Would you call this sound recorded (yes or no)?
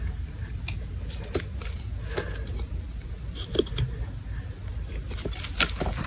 yes